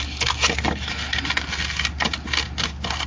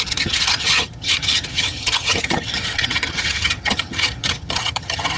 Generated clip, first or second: second